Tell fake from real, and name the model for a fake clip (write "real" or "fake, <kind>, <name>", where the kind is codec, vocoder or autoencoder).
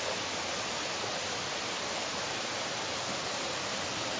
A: real